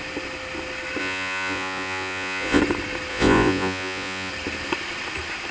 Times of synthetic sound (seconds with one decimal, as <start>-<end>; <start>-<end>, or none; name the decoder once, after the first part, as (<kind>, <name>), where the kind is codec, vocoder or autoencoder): 1.0-2.6 (vocoder, Vocos); 3.1-4.3